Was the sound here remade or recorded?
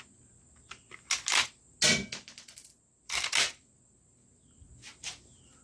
recorded